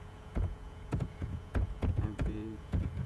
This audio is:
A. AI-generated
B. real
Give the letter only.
A